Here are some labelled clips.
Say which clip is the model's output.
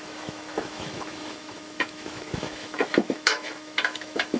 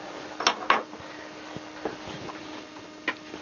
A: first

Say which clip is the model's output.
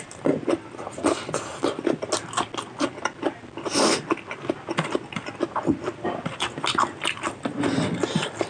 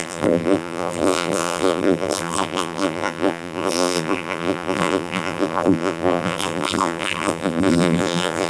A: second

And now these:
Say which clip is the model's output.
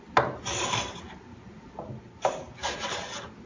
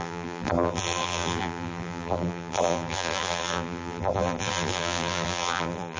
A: second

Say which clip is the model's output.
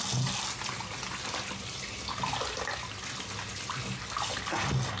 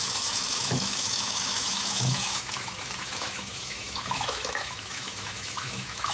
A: second